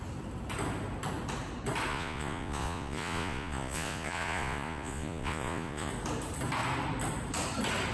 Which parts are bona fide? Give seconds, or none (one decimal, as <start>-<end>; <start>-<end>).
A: 0.0-1.9; 5.9-7.9